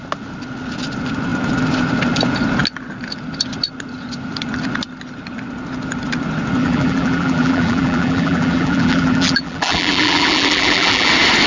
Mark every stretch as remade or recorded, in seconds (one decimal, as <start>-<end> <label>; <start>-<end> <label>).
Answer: 0.0-6.6 recorded; 6.6-11.1 remade; 11.1-11.5 recorded